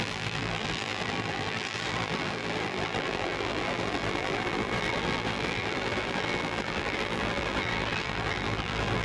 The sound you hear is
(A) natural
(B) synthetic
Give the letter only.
B